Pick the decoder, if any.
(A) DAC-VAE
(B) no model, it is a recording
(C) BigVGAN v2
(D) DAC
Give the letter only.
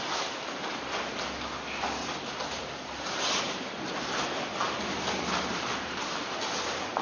B